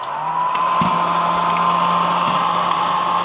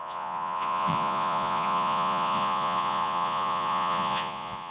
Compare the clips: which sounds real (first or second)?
first